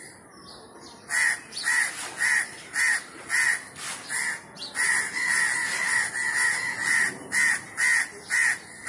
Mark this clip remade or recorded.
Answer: recorded